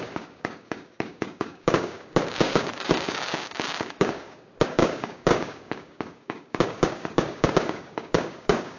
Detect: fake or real fake